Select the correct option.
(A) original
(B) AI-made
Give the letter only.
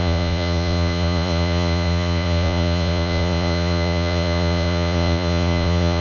B